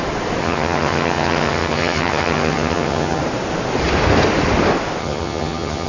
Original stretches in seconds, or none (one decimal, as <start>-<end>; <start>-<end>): 0.0-0.4; 3.2-5.0